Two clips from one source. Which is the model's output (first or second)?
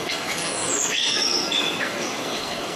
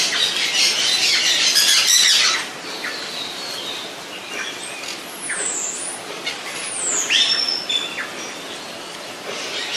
first